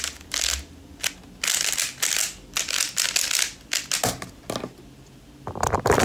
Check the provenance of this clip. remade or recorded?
recorded